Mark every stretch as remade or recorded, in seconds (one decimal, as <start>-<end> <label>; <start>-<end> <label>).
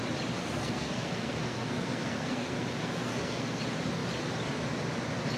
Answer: 0.0-0.4 recorded; 0.4-3.6 remade; 3.6-5.4 recorded